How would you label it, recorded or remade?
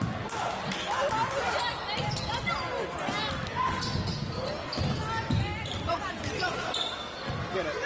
recorded